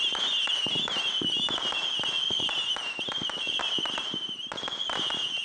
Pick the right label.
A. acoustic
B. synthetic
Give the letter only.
A